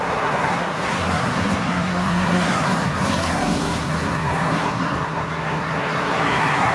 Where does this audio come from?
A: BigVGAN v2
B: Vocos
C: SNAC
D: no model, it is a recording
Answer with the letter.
C